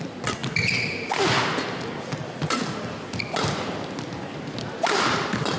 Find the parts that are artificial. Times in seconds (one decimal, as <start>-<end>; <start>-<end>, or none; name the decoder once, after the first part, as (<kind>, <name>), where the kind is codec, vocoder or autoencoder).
none